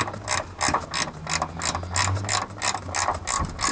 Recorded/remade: recorded